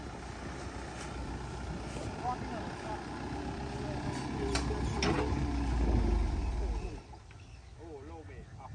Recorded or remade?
recorded